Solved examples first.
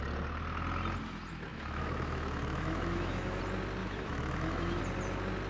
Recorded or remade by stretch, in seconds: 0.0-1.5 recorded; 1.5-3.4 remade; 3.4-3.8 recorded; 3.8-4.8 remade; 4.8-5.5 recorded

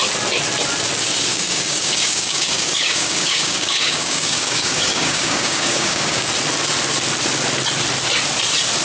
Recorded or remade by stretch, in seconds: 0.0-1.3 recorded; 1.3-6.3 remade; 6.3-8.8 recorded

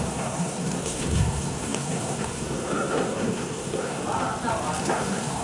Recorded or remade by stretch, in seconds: 0.0-4.0 remade; 4.0-4.8 recorded; 4.8-5.4 remade